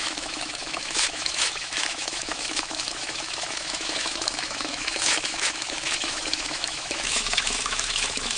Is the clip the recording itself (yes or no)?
no